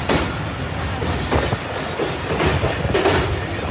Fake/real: real